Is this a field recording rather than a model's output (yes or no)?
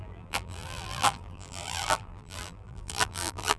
no